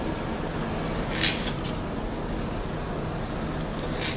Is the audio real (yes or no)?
yes